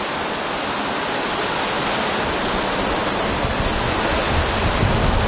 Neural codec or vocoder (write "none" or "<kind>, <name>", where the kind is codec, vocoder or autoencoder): none